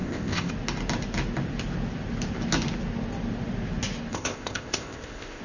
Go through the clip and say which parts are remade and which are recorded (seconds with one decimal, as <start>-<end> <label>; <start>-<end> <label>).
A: 0.0-0.5 remade; 0.5-4.1 recorded; 4.1-5.4 remade